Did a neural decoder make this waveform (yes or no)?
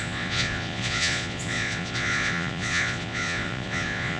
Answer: yes